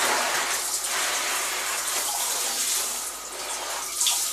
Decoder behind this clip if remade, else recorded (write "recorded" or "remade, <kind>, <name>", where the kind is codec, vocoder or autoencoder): recorded